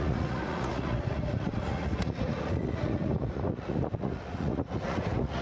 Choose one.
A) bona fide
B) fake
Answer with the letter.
B